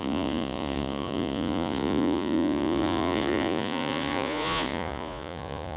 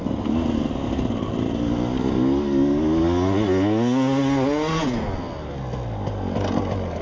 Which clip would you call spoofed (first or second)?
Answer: first